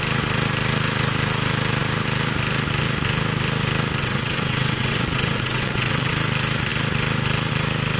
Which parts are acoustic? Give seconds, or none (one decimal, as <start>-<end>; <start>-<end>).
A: 0.0-4.0; 6.1-8.0

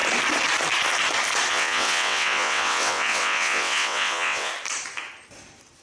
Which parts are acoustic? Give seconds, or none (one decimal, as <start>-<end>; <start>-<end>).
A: 0.0-1.5; 4.5-5.8

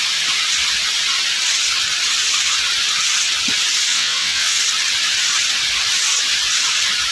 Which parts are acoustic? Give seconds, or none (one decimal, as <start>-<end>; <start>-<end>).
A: 0.0-3.9; 4.6-7.1